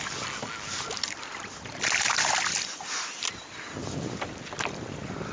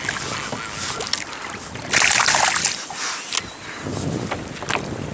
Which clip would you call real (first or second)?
second